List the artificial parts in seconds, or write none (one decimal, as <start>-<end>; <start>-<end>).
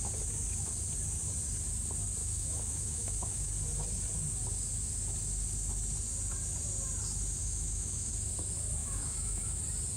2.2-3.5; 7.4-8.1; 8.8-9.6